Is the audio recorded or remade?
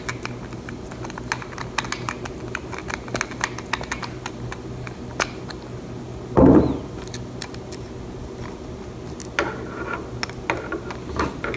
recorded